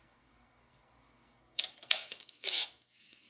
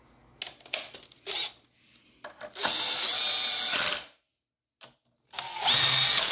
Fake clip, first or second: first